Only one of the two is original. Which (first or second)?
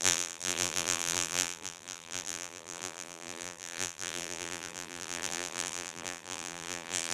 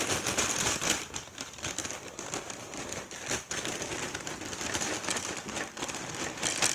second